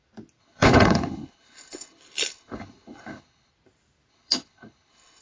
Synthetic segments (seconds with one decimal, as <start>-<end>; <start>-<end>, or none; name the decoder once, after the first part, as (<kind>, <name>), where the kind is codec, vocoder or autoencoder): 0.4-3.5 (codec, HILCodec); 4.1-5.2